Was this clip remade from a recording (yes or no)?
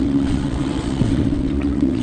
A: yes